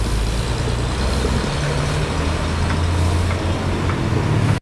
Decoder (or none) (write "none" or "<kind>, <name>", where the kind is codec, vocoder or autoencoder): none